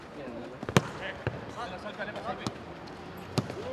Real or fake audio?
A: real